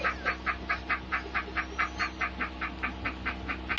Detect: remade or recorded recorded